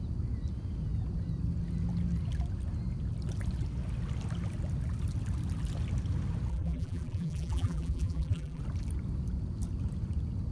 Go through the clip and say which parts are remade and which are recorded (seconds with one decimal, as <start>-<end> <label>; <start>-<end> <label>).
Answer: 0.0-6.5 recorded; 6.5-8.6 remade; 8.6-10.5 recorded